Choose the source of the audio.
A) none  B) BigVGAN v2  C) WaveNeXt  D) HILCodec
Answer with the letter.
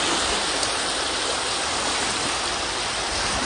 A